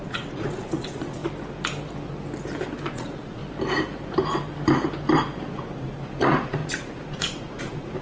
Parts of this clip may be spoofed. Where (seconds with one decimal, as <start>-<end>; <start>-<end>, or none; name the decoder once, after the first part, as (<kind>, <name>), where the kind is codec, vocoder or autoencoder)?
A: 0.0-1.2 (vocoder, Vocos); 2.9-3.4; 5.5-8.0